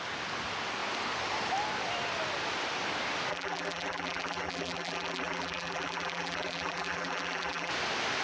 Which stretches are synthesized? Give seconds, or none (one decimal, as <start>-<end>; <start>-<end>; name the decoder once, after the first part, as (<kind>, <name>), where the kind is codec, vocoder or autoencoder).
3.3-7.7 (vocoder, BigVGAN v2)